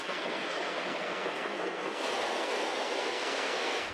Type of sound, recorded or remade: remade